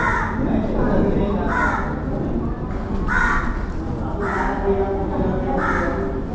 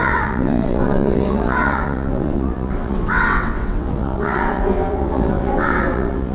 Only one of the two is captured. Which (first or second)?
first